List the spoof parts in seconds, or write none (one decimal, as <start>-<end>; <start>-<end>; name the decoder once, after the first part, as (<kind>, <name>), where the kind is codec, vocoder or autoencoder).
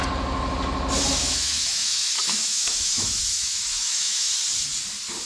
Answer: 1.2-4.4 (autoencoder, DAC-VAE)